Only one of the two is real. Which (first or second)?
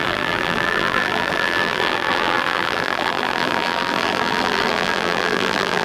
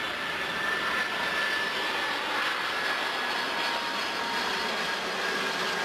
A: second